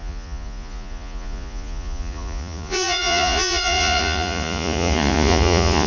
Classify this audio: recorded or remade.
remade